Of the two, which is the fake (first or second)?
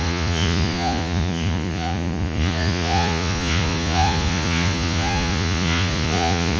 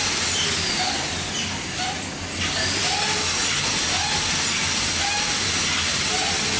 first